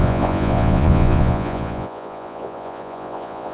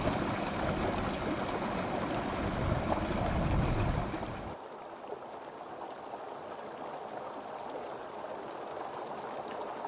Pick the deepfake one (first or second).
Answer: first